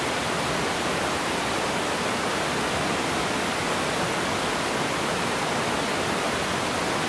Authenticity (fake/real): real